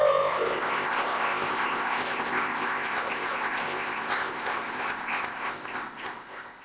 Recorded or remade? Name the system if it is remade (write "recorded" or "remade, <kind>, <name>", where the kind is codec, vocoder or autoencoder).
remade, codec, ZipCodec